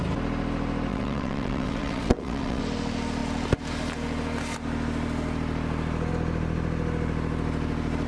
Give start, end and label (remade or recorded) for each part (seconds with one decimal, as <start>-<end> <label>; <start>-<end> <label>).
0.0-0.9 recorded; 0.9-2.6 remade; 2.6-8.1 recorded